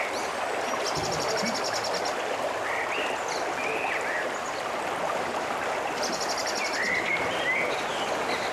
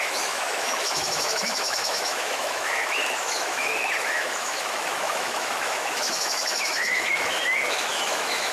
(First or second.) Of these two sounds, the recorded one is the first